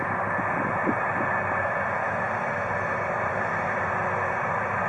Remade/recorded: recorded